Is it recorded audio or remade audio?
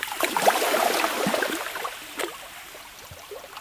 recorded